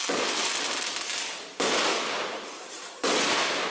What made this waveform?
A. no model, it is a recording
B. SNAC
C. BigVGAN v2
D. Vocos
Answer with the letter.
A